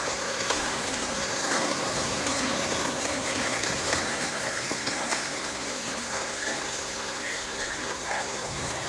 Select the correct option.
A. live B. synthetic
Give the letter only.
B